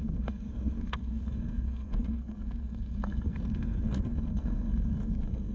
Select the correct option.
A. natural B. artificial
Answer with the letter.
B